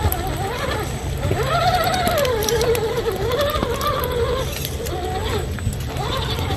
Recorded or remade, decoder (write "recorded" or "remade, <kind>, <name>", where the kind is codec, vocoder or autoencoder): recorded